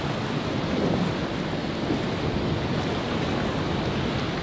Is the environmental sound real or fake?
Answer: real